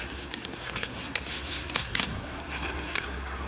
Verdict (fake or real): fake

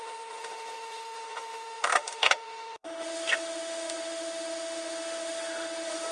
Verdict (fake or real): fake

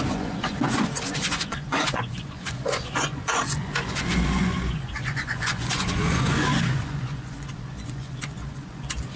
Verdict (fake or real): fake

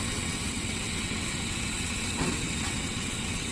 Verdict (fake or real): fake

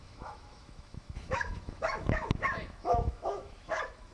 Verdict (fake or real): fake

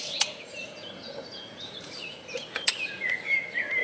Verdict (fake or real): fake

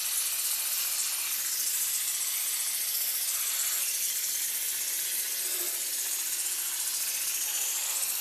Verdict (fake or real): real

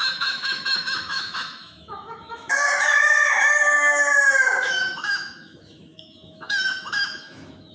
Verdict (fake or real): fake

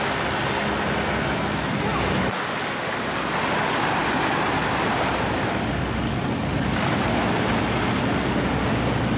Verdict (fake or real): real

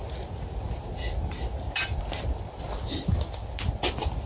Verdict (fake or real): real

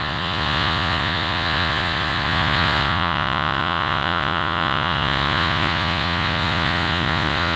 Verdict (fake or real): fake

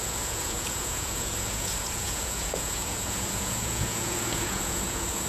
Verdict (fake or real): fake